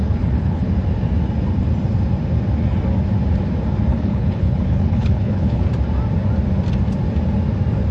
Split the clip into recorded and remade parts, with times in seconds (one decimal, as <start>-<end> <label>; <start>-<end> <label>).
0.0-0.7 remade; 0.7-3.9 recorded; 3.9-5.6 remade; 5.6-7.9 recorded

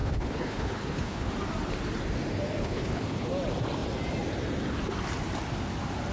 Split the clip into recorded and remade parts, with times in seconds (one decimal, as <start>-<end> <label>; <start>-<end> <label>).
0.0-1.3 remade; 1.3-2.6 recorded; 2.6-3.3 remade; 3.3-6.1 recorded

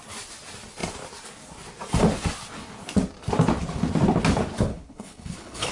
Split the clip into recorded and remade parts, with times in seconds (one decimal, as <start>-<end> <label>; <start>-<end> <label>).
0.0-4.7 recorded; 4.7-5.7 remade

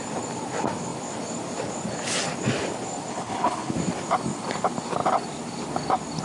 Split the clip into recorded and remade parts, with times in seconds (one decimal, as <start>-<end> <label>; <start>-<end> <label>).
0.0-3.1 recorded; 3.1-3.7 remade; 3.7-6.2 recorded

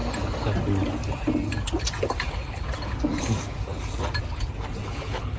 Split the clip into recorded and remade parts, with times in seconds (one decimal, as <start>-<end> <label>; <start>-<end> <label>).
0.0-4.8 recorded; 4.8-5.4 remade

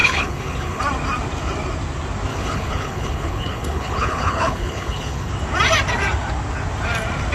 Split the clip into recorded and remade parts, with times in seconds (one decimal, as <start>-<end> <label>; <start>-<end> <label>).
0.0-0.8 remade; 0.8-2.3 recorded; 2.3-5.3 remade; 5.3-7.3 recorded

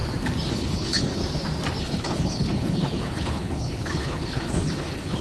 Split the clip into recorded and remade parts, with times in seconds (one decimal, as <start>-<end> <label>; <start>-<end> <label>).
0.0-0.5 recorded; 0.5-1.2 remade; 1.2-1.8 recorded; 1.8-5.2 remade

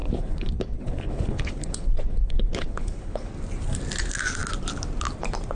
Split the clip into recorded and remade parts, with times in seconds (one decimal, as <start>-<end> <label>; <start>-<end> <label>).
0.0-3.3 remade; 3.3-5.5 recorded